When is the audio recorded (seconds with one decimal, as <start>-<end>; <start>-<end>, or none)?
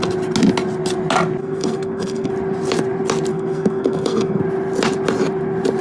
0.0-1.4; 2.3-3.3; 4.4-5.8